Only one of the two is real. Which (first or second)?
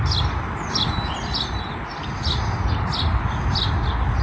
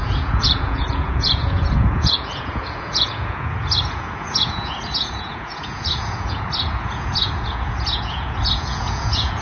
first